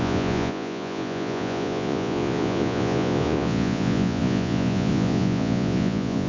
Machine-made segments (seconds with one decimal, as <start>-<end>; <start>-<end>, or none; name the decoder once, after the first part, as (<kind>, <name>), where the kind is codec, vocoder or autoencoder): 0.0-6.3 (vocoder, Vocos)